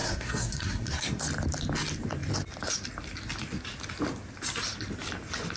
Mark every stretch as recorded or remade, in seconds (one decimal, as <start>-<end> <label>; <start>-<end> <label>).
0.0-1.2 remade; 1.2-5.6 recorded